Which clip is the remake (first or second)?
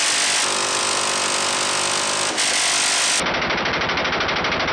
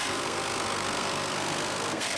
second